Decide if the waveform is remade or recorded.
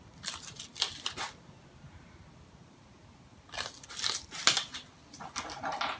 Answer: recorded